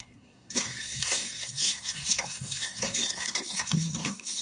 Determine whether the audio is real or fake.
fake